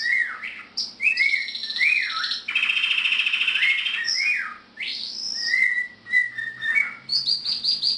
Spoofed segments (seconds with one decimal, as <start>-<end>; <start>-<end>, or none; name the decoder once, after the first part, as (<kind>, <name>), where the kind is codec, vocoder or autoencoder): none